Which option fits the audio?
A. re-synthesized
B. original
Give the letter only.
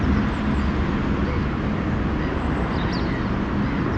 B